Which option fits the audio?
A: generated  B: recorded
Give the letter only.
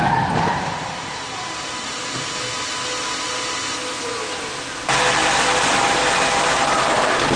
B